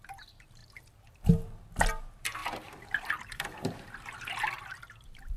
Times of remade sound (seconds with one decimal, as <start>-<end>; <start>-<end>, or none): 0.0-0.6; 2.0-5.4